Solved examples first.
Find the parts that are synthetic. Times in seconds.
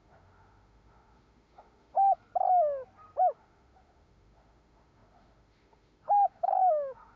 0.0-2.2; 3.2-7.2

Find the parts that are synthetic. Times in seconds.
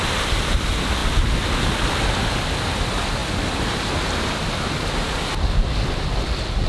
none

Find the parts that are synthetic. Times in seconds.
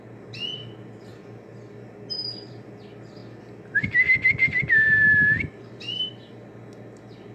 none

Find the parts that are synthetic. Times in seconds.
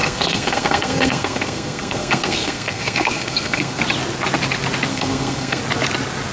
0.0-3.8; 4.9-5.6